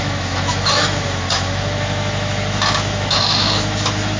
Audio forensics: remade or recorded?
remade